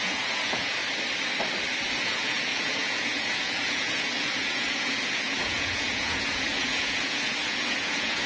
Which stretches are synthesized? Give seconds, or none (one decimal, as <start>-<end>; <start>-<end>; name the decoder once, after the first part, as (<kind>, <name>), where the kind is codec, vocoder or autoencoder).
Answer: 0.0-0.8 (vocoder, Vocos); 1.9-8.3